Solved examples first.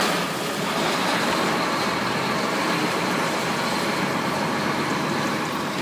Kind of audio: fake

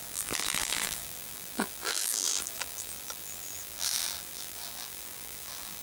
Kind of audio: fake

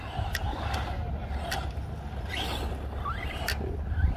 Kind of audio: real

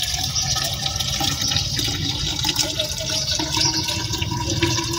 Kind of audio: fake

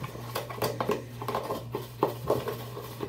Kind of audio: real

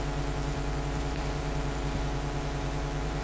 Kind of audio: fake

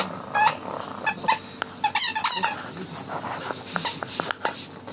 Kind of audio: real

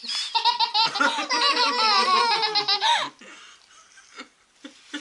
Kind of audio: real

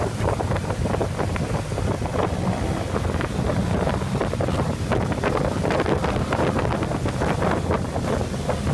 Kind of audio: real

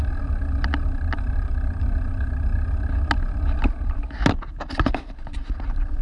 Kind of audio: real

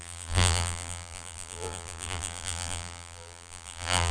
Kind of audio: fake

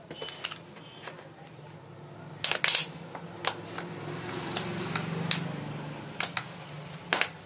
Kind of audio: real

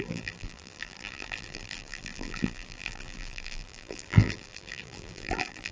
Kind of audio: fake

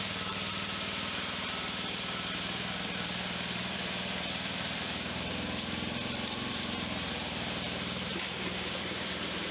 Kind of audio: fake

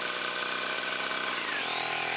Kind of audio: fake